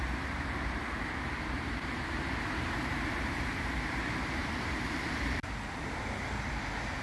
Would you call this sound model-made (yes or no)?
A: yes